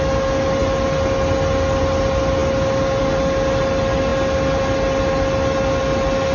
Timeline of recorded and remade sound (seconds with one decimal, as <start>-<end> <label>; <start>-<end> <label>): 0.0-6.3 recorded